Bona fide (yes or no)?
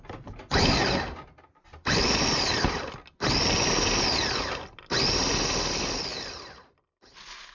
yes